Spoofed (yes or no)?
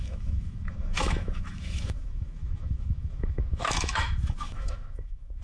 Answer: yes